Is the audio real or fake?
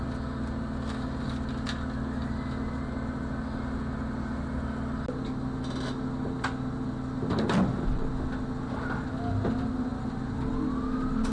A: real